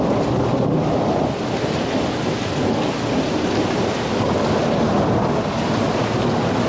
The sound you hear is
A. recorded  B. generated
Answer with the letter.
A